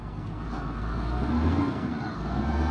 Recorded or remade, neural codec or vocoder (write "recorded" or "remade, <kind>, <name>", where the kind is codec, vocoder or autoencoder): remade, codec, SNAC